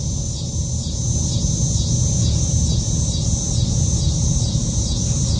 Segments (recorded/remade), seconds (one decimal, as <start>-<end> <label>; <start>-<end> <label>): 0.0-5.4 recorded

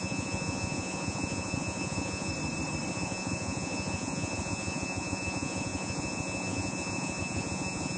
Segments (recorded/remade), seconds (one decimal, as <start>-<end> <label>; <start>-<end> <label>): 0.0-2.3 remade; 2.3-2.9 recorded; 2.9-8.0 remade

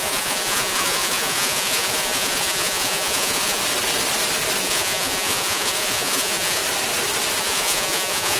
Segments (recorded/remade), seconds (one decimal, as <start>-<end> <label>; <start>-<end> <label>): 0.0-3.6 remade; 3.6-4.6 recorded; 4.6-6.6 remade; 6.6-7.4 recorded; 7.4-8.4 remade

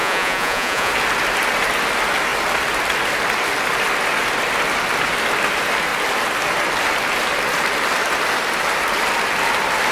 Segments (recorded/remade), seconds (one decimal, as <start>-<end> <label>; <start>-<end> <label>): 0.0-0.9 remade; 0.9-9.9 recorded

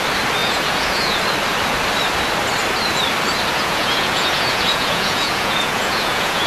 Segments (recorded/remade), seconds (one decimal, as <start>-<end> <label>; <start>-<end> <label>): 0.0-0.4 recorded; 0.4-1.2 remade; 1.2-3.5 recorded; 3.5-6.5 remade